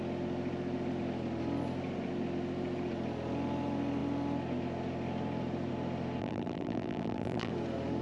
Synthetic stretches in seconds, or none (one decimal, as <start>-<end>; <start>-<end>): 6.2-7.5